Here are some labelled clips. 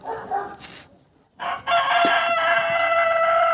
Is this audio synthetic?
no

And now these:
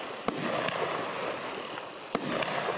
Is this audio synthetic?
no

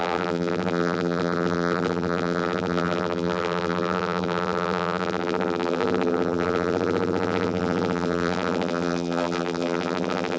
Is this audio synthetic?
yes